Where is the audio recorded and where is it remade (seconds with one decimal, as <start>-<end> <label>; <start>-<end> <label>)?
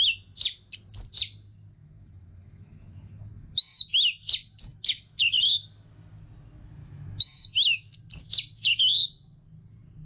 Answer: 0.0-1.8 recorded; 1.8-3.8 remade; 3.8-4.6 recorded; 4.6-5.4 remade; 5.4-6.8 recorded; 6.8-7.9 remade; 7.9-10.1 recorded